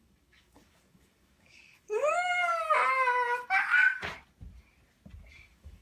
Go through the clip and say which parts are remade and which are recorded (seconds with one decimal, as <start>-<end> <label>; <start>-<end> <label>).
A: 0.0-2.5 remade; 2.5-5.3 recorded; 5.3-5.8 remade